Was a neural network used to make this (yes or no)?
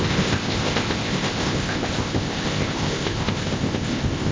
yes